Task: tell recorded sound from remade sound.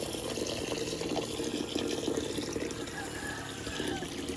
recorded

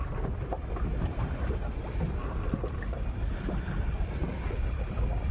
recorded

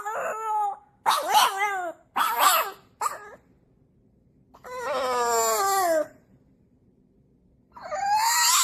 recorded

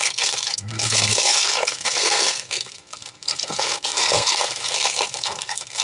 remade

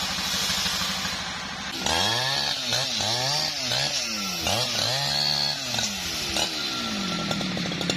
recorded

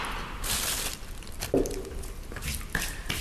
recorded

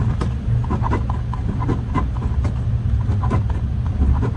remade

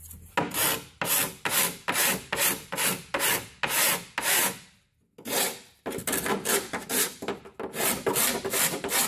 recorded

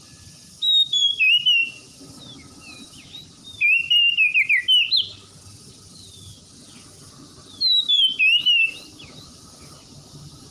recorded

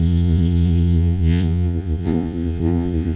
remade